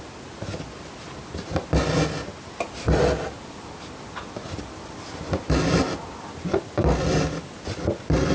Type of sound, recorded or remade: recorded